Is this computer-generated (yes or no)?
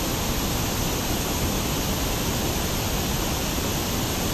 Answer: no